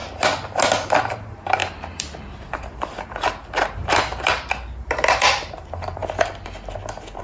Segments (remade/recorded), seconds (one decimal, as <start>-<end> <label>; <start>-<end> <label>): 0.0-1.1 recorded; 1.1-6.0 remade; 6.0-7.2 recorded